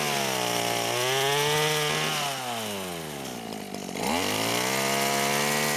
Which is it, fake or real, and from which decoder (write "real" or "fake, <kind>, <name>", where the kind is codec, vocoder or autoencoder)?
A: real